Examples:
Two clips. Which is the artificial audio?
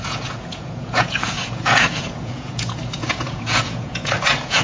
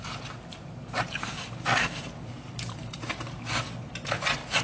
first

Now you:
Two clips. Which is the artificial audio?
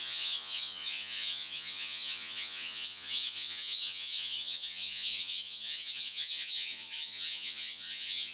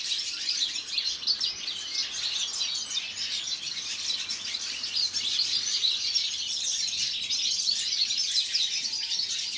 first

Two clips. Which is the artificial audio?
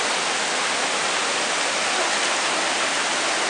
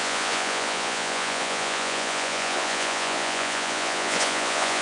second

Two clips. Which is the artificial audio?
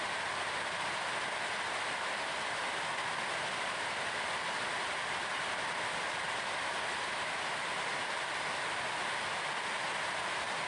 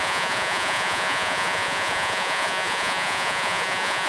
second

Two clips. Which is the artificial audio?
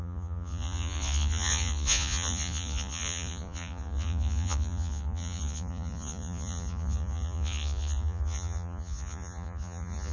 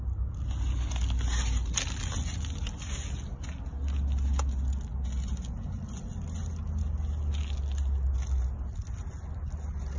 first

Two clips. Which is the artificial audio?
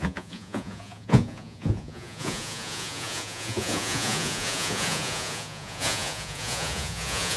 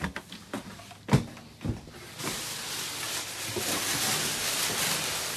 first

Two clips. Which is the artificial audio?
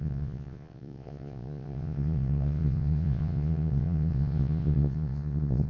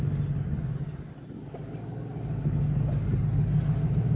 first